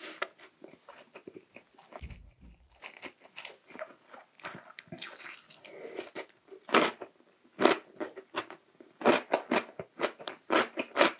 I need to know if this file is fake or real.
real